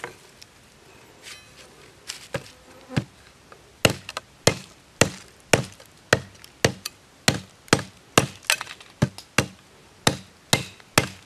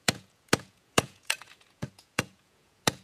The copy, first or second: second